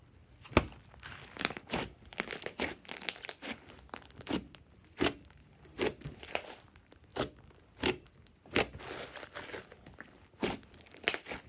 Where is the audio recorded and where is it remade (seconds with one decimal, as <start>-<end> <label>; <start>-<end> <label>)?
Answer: 0.0-11.5 recorded